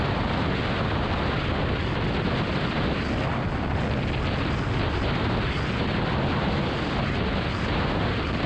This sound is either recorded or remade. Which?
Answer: recorded